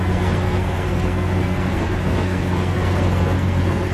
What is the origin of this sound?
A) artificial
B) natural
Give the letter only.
A